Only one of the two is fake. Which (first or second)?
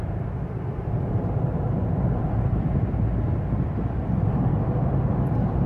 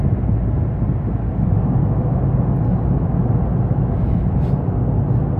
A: first